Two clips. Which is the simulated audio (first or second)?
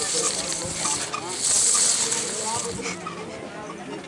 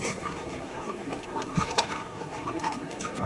second